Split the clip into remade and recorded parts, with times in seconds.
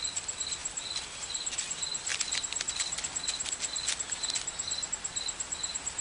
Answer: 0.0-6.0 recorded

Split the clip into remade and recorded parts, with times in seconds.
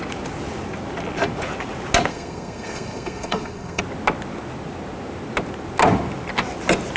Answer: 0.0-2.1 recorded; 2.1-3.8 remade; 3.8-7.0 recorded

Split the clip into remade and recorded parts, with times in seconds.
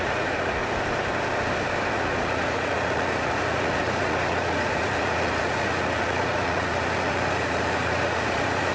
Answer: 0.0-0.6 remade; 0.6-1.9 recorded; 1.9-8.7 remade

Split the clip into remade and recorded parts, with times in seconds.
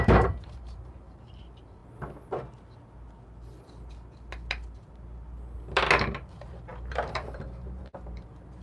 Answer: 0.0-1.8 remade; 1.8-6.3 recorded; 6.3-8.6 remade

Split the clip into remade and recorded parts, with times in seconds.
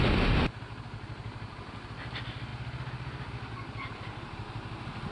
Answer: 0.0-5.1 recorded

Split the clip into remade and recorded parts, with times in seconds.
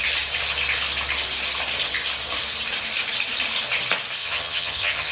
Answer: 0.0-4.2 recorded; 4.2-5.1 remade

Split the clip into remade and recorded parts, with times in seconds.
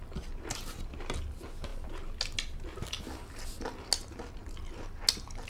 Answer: 0.0-5.5 recorded